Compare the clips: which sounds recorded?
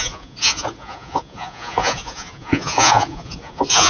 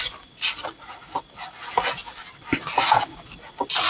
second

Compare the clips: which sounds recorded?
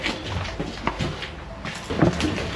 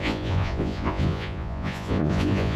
first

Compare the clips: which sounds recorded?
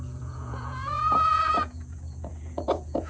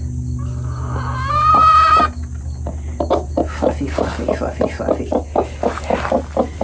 second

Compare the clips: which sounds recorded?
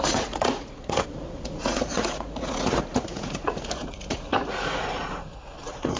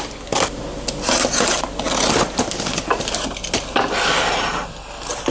second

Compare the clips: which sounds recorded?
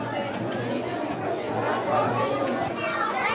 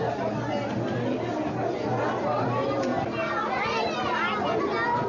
second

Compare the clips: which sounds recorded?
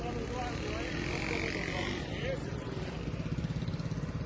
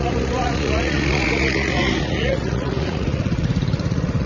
first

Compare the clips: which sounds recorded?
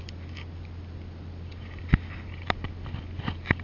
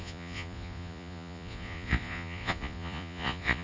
first